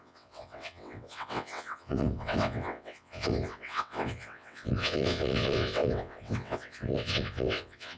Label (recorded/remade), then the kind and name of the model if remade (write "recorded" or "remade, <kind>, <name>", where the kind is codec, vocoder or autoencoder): remade, vocoder, WaveNeXt